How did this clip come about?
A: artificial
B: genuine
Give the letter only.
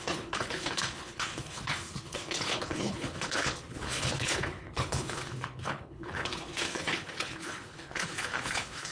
A